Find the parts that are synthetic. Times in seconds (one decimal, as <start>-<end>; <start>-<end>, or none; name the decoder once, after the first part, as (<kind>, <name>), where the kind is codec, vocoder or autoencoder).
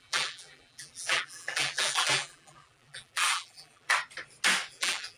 0.0-3.9 (vocoder, BigVGAN v2); 4.7-5.2